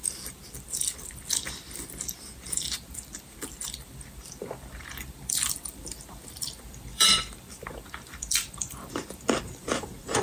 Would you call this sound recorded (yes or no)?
no